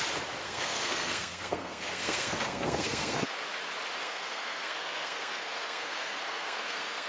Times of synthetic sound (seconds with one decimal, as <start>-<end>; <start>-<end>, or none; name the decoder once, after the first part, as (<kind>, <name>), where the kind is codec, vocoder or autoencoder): 0.4-3.3 (codec, SNAC); 4.0-7.1

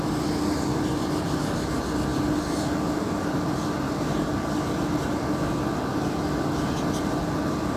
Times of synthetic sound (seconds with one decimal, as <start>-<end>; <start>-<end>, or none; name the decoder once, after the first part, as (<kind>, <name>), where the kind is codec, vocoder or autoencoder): none

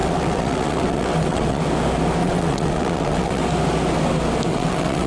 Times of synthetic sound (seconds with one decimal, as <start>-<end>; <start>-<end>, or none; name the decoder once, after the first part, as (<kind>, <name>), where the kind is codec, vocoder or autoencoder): 0.0-1.6 (vocoder, WaveNeXt); 2.2-3.4; 4.5-5.1

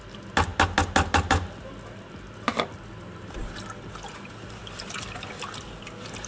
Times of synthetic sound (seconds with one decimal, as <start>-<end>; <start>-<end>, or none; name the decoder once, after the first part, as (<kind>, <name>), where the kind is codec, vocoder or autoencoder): none

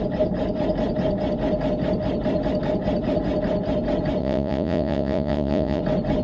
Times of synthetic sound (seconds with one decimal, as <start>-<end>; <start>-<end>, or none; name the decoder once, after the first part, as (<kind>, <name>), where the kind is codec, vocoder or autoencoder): 4.2-5.8 (vocoder, Vocos)

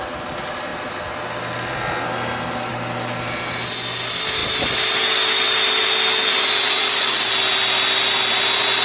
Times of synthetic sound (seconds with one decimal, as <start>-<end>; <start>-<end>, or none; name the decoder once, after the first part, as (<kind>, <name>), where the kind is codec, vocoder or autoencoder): 6.8-7.3 (codec, DAC)